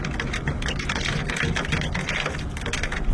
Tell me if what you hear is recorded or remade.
recorded